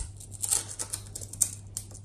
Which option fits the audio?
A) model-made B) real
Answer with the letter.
B